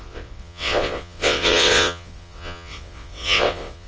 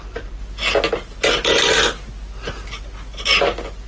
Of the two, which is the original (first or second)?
second